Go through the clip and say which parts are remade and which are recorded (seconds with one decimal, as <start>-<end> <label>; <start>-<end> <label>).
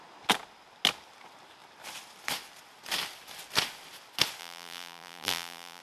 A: 0.0-4.4 recorded; 4.4-5.8 remade